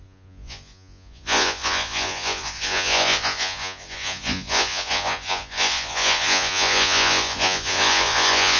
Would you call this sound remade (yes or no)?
yes